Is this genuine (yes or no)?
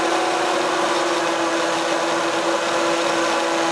yes